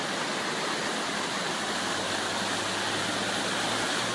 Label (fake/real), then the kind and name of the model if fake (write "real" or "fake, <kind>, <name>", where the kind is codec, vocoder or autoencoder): real